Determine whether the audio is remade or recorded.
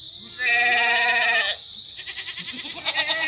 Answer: recorded